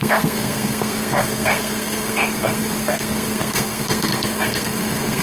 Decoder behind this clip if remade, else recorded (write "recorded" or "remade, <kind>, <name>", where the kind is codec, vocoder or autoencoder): remade, codec, SNAC